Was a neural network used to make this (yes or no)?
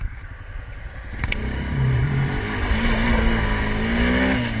no